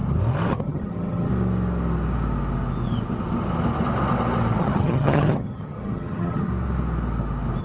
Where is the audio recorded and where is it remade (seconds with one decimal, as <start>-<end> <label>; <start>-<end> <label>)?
0.0-0.5 recorded; 0.5-1.3 remade; 1.3-4.6 recorded; 4.6-6.5 remade; 6.5-7.6 recorded